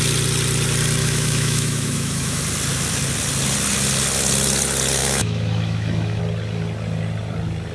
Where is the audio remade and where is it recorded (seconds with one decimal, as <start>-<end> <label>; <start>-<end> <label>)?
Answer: 0.0-1.0 recorded; 1.0-2.4 remade; 2.4-5.0 recorded; 5.0-6.2 remade; 6.2-7.7 recorded

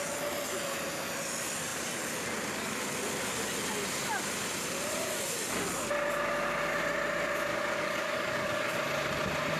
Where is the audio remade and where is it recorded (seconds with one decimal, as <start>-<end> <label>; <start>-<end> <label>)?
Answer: 0.0-7.5 recorded; 7.5-8.8 remade; 8.8-9.6 recorded